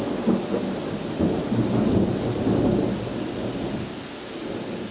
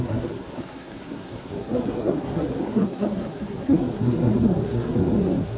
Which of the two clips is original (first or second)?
first